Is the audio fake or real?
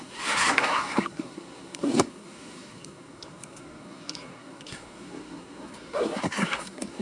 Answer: fake